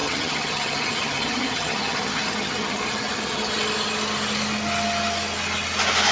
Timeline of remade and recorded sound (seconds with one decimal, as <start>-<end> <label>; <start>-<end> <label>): 0.0-3.5 remade; 3.5-6.1 recorded